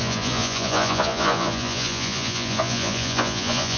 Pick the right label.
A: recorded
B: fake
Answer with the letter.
B